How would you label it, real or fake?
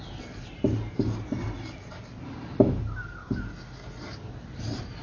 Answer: real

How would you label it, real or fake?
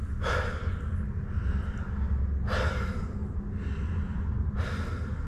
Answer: real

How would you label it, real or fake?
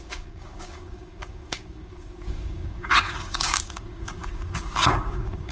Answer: fake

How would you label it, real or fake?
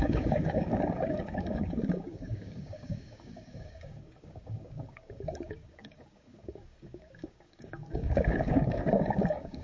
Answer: fake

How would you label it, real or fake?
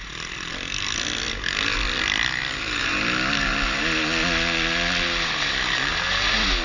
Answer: real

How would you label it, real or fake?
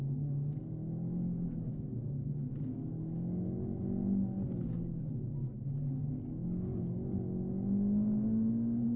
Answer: real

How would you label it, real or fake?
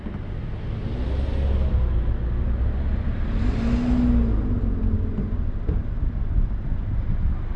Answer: real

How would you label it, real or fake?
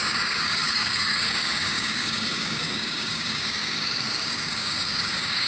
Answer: fake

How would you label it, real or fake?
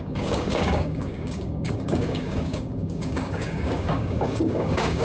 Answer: fake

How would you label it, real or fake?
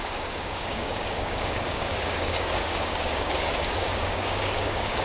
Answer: fake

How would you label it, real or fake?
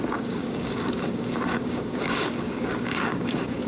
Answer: fake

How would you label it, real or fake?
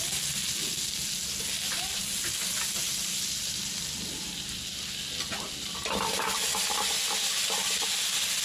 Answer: real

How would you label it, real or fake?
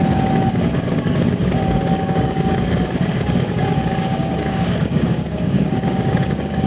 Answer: fake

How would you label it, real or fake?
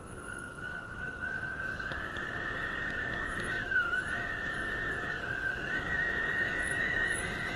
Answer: fake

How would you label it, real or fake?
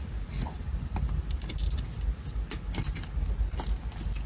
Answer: real